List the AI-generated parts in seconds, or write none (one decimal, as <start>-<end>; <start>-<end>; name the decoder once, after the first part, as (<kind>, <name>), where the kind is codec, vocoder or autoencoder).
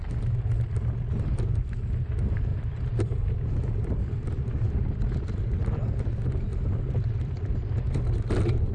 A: 2.5-5.6 (vocoder, BigVGAN v2); 6.5-7.5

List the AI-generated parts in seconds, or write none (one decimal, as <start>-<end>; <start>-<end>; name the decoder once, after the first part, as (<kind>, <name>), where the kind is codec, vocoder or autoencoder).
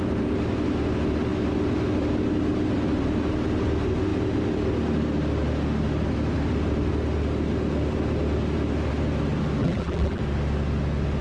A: 9.6-10.2 (vocoder, BigVGAN v2)